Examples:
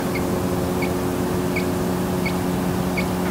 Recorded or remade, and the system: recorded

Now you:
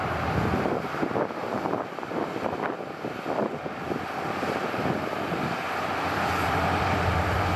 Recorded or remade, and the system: remade, vocoder, BigVGAN v2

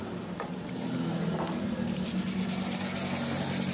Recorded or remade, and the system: recorded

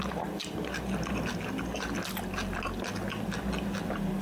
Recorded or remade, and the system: recorded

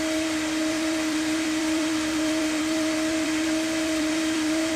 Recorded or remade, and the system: remade, vocoder, BigVGAN v2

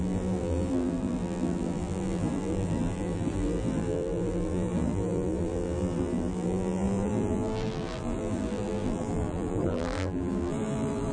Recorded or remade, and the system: remade, vocoder, BigVGAN v2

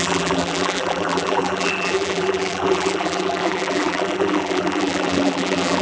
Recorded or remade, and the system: remade, vocoder, BigVGAN v2